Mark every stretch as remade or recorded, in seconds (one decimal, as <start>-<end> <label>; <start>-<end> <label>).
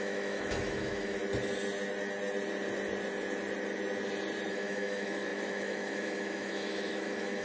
0.0-1.2 remade; 1.2-4.5 recorded; 4.5-7.4 remade